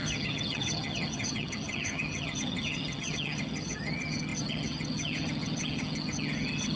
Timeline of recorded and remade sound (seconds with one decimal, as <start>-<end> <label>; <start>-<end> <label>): 0.0-6.8 remade